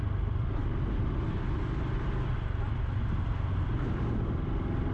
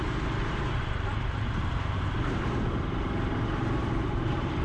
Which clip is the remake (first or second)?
second